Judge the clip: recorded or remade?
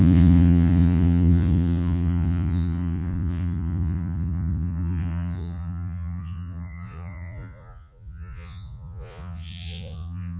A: remade